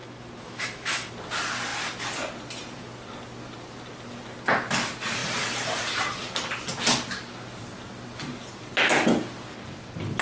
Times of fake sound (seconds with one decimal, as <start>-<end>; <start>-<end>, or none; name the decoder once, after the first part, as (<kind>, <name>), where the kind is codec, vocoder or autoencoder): 0.0-1.1 (autoencoder, DAC-VAE)